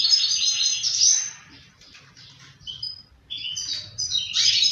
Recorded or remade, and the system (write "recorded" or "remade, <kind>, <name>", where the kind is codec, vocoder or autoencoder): remade, vocoder, BigVGAN v2